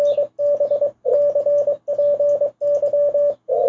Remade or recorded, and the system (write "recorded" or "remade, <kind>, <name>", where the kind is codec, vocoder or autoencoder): recorded